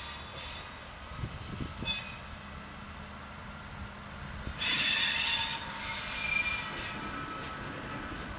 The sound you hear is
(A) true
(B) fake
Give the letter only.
A